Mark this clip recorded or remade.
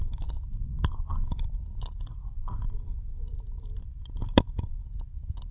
recorded